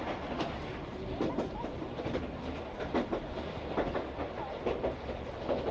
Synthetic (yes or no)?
no